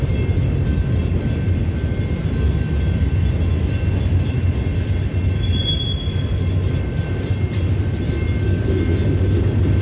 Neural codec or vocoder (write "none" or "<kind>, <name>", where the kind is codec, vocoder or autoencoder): none